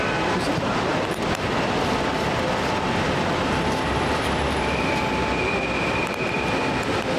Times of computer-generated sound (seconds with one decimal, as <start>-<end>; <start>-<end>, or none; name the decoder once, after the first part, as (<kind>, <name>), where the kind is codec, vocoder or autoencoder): 0.0-5.0 (vocoder, BigVGAN v2); 6.1-7.2